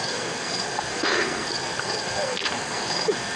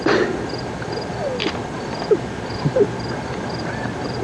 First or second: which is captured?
second